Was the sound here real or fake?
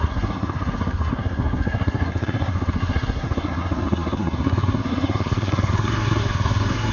fake